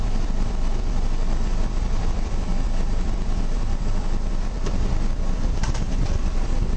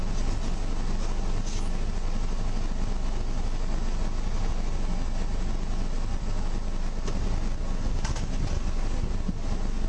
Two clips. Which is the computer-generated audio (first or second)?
first